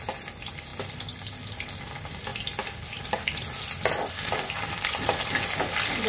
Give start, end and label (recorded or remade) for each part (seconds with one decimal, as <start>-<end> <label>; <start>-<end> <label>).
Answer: 0.0-6.1 recorded